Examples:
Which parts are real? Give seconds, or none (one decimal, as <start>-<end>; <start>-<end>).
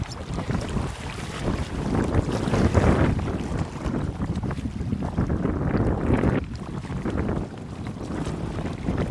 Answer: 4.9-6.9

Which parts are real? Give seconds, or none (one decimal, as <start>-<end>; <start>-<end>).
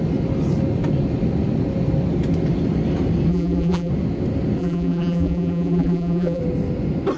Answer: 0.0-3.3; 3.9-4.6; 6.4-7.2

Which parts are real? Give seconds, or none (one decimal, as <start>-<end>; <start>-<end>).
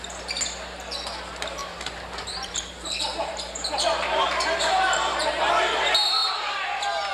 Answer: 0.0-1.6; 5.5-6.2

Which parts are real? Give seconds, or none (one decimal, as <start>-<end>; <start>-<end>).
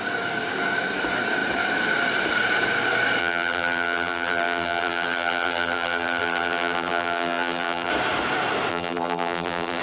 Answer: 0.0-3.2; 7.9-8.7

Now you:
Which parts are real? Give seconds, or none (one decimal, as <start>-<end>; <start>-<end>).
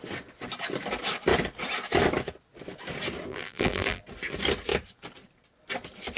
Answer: 0.0-3.3; 4.0-6.2